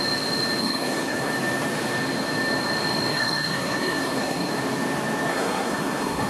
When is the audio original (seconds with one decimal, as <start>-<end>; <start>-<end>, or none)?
0.0-0.6; 1.3-3.1; 4.5-5.3